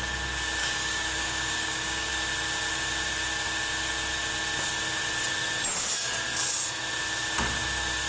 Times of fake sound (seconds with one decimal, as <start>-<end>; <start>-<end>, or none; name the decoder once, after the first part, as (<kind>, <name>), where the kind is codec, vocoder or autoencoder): 0.6-2.1 (codec, DAC)